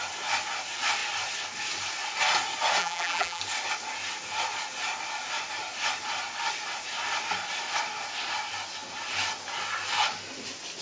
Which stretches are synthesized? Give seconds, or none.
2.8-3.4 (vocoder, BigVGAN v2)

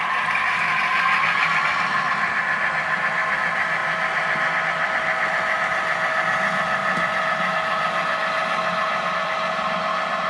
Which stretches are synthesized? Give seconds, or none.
none